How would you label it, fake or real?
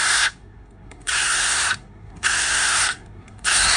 fake